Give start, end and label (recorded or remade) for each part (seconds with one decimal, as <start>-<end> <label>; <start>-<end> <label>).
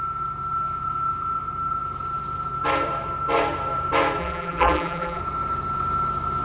0.0-4.2 recorded; 4.2-5.2 remade; 5.2-6.4 recorded